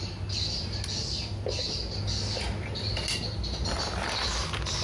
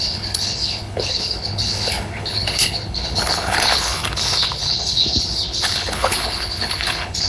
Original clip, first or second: first